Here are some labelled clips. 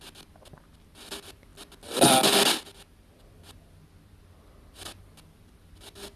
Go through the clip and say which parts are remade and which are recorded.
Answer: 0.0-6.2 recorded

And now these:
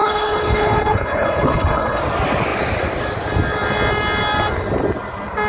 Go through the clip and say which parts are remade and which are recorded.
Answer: 0.0-2.0 remade; 2.0-5.5 recorded

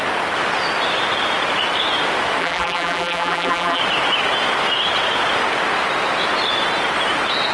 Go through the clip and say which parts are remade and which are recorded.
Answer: 0.0-2.4 recorded; 2.4-3.8 remade; 3.8-7.5 recorded

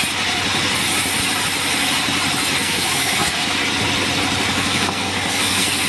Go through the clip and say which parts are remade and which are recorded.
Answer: 0.0-2.6 recorded; 2.6-3.5 remade; 3.5-4.5 recorded; 4.5-5.9 remade